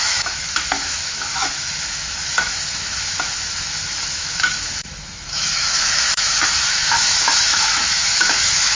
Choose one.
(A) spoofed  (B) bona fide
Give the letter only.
A